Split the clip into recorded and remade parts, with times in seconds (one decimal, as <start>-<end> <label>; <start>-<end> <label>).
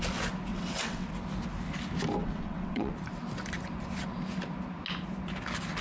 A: 0.0-0.5 recorded; 0.5-1.1 remade; 1.1-2.2 recorded; 2.2-2.9 remade; 2.9-5.8 recorded